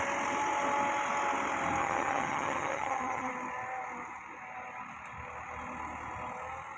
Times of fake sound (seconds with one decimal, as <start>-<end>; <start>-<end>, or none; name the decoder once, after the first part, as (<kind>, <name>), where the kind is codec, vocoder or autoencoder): 1.8-3.3 (vocoder, HiFi-GAN)